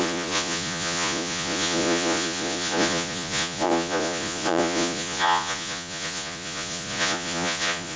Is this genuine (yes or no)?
no